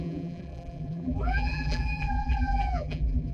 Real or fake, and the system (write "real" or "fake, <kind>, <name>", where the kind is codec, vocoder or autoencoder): fake, vocoder, BigVGAN v2